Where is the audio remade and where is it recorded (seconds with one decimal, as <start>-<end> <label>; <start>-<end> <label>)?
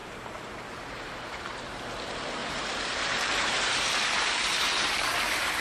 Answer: 0.0-1.8 remade; 1.8-2.4 recorded; 2.4-5.6 remade